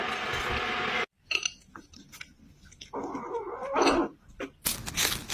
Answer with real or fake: real